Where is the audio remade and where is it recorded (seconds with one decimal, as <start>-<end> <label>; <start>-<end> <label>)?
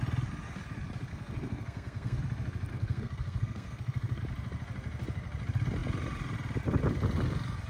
0.0-1.1 recorded; 1.1-2.2 remade; 2.2-2.7 recorded; 2.7-4.2 remade; 4.2-7.7 recorded